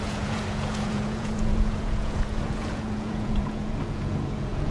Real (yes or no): no